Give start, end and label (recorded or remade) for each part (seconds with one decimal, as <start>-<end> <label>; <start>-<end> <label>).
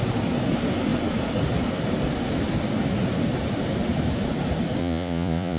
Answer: 0.0-4.8 recorded; 4.8-5.6 remade